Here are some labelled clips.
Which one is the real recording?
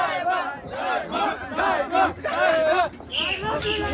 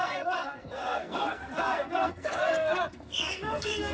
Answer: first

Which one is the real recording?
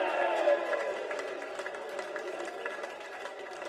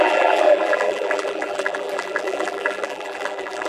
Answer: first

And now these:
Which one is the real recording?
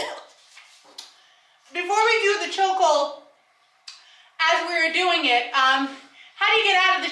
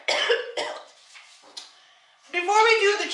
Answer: first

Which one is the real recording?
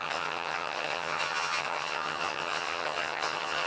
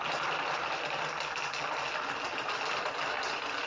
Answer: second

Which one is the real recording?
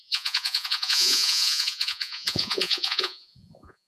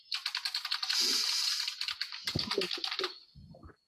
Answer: second